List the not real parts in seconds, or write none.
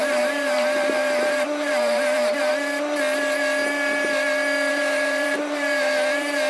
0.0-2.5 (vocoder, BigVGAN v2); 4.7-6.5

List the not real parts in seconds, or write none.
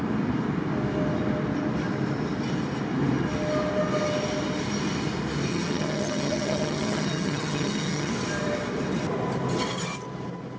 5.5-8.1 (vocoder, HiFi-GAN)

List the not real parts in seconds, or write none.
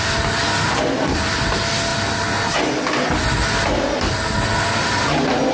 none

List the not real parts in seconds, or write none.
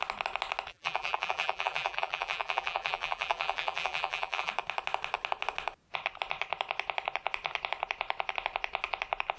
0.7-4.5 (vocoder, BigVGAN v2)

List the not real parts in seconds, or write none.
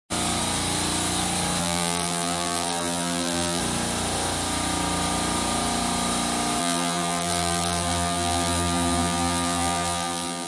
1.6-3.6 (vocoder, BigVGAN v2); 6.6-10.5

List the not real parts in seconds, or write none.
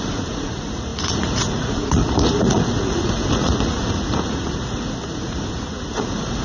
0.0-6.4 (vocoder, Vocos)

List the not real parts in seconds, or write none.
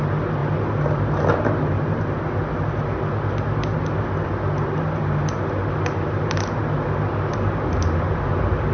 none